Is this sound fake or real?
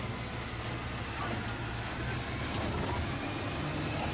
real